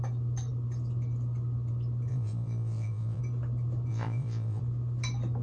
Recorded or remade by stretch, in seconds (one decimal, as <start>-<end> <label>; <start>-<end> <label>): 0.0-2.1 recorded; 2.1-3.2 remade; 3.2-3.9 recorded; 3.9-4.6 remade; 4.6-5.4 recorded